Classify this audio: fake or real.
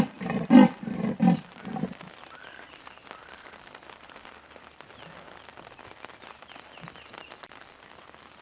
real